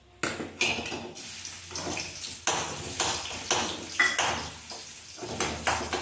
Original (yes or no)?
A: yes